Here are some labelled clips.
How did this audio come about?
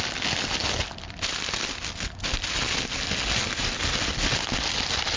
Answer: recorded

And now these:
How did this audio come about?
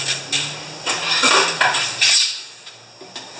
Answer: recorded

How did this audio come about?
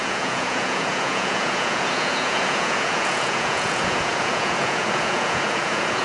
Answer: remade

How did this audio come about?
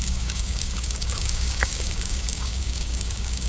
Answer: remade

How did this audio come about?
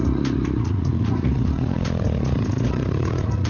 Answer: remade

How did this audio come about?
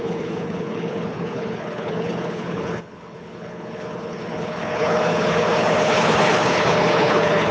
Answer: remade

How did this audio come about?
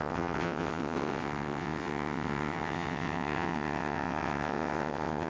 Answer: remade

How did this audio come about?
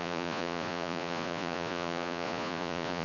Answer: remade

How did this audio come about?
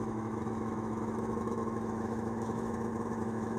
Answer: remade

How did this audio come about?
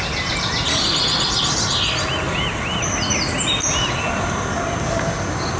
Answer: recorded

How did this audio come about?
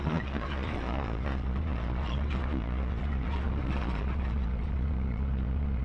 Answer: remade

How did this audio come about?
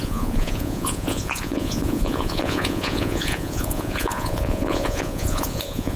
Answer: remade